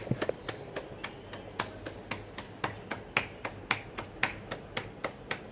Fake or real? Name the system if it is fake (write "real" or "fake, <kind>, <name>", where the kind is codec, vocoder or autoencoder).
real